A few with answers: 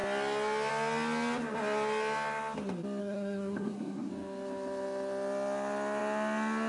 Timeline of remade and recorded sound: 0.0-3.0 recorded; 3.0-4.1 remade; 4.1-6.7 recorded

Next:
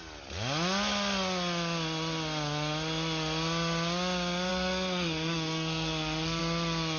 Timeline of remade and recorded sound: 0.0-4.5 recorded; 4.5-6.4 remade; 6.4-7.0 recorded

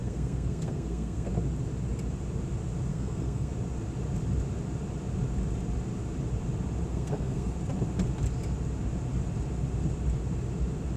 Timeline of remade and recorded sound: 0.0-1.3 remade; 1.3-2.9 recorded; 2.9-3.5 remade; 3.5-6.9 recorded; 6.9-7.5 remade; 7.5-11.0 recorded

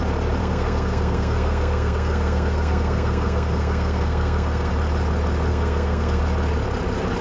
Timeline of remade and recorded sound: 0.0-0.4 recorded; 0.4-4.7 remade; 4.7-5.5 recorded; 5.5-6.2 remade; 6.2-7.2 recorded

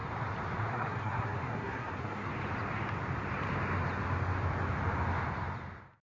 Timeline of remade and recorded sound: 0.0-0.7 recorded; 0.7-2.3 remade; 2.3-6.2 recorded